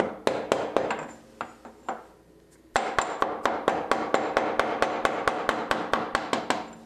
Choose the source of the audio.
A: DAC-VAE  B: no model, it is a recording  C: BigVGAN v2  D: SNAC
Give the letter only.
B